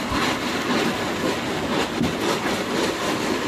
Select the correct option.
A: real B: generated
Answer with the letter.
A